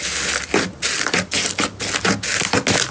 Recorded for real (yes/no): yes